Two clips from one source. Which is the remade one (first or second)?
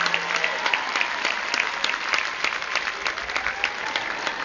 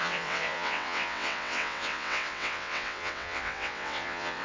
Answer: second